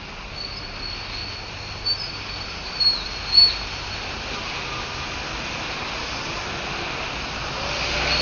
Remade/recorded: recorded